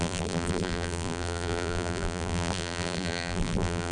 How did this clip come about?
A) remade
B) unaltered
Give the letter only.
A